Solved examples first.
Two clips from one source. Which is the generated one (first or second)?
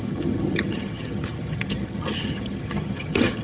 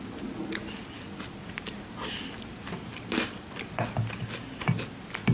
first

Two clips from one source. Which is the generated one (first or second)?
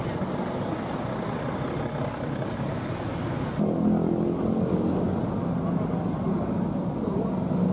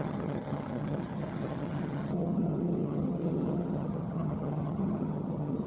second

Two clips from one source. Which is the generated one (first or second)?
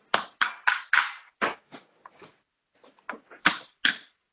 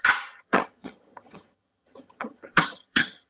second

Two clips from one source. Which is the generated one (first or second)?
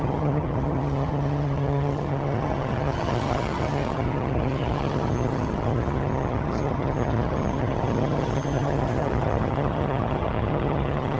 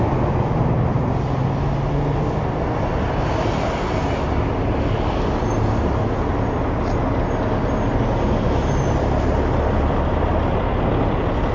first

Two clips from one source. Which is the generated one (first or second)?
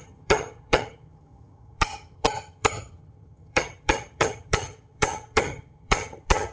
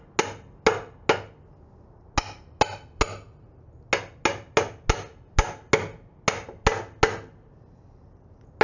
first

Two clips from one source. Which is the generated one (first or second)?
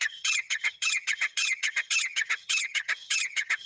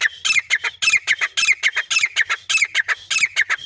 first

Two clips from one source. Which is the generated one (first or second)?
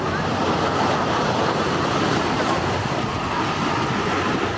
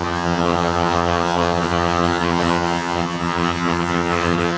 second